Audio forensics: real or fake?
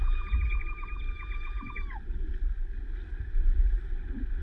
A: real